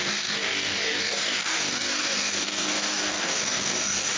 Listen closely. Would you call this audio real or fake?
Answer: fake